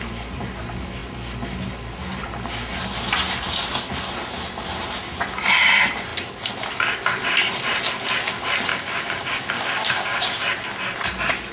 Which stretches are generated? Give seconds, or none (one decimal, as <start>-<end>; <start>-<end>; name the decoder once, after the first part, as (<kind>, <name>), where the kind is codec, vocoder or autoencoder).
8.7-10.3 (codec, DAC)